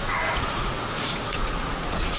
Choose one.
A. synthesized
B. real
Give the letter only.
A